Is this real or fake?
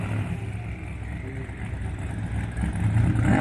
real